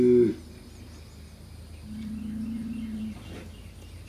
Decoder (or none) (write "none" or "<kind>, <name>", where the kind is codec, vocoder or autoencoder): none